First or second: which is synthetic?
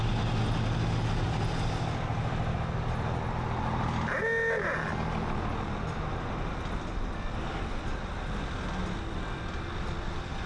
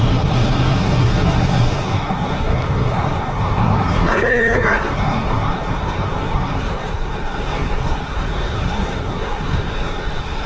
second